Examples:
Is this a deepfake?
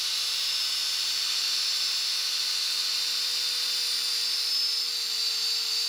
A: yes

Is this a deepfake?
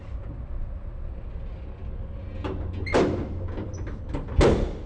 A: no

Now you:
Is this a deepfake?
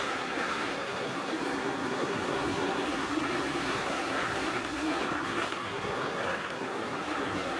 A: yes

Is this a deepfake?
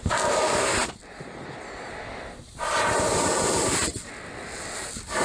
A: no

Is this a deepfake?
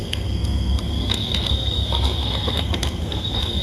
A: yes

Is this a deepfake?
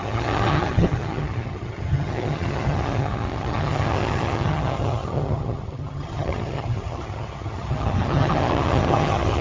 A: yes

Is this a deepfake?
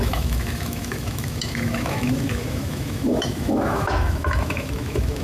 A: yes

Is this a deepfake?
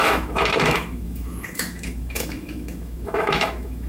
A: yes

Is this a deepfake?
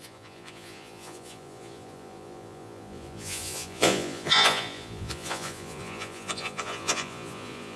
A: yes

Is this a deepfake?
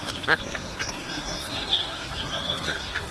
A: yes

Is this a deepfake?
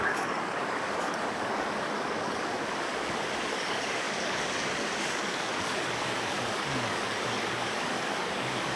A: yes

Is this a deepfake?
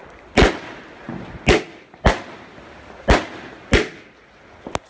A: no